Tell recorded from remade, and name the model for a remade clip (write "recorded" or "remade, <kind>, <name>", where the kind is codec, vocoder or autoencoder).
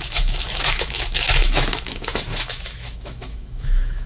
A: remade, autoencoder, DAC-VAE